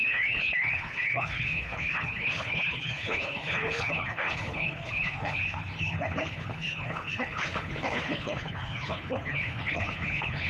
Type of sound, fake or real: fake